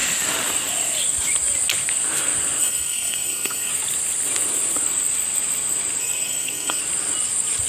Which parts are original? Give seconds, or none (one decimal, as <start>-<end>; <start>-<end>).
0.0-2.6; 3.7-6.0; 6.8-7.7